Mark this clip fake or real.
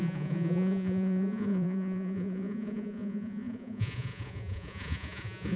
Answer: fake